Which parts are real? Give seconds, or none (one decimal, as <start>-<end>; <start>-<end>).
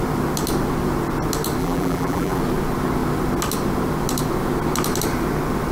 0.0-1.6; 2.4-5.7